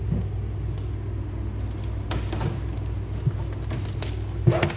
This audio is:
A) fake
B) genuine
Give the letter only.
B